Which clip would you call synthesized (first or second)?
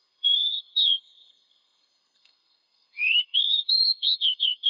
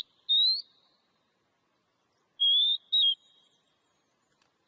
first